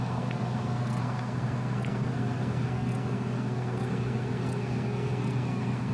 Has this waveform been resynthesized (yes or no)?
yes